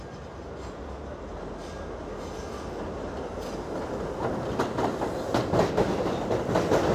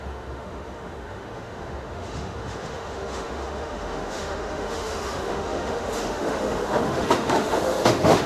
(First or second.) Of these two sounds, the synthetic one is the second